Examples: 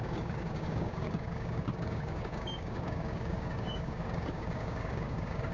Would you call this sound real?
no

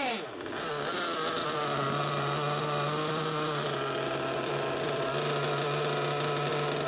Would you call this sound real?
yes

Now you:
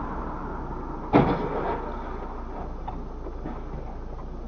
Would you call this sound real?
yes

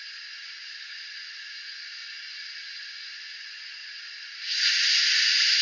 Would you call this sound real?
yes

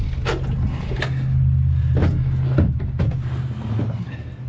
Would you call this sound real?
yes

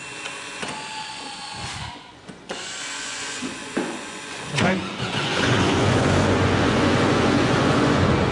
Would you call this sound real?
no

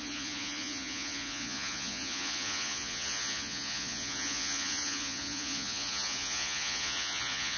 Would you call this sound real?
no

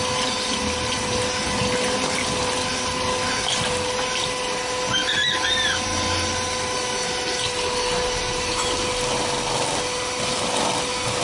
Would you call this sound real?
yes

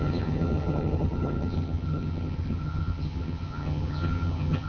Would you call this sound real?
no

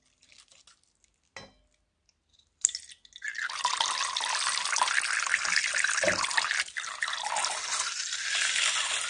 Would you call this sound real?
yes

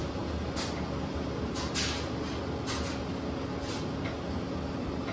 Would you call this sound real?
yes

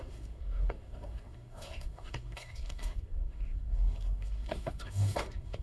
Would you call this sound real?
no